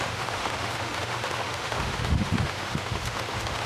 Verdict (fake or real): fake